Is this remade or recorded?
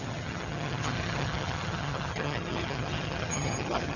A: remade